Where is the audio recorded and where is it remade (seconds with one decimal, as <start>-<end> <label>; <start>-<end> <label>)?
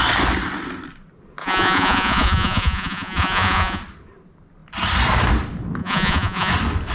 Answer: 0.0-1.4 recorded; 1.4-3.8 remade; 3.8-5.8 recorded; 5.8-6.5 remade; 6.5-6.9 recorded